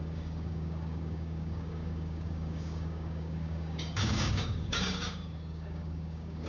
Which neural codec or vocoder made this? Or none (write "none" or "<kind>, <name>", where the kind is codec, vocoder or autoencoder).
codec, DAC